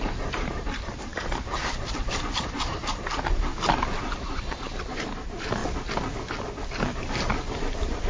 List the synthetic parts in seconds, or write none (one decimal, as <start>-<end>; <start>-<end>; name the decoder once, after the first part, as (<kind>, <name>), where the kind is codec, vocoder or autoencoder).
0.0-3.5 (vocoder, BigVGAN v2); 4.2-5.6; 6.8-8.1